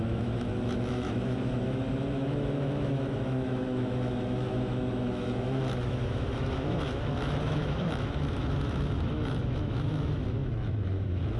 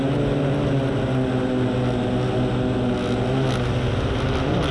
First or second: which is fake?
first